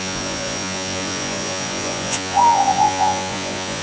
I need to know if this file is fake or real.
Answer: fake